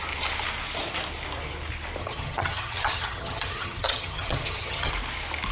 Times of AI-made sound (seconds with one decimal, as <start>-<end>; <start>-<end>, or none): 2.0-4.9